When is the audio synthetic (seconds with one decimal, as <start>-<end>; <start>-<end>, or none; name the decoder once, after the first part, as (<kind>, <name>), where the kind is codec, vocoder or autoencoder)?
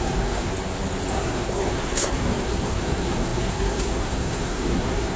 0.0-0.5 (codec, SNAC); 1.1-5.2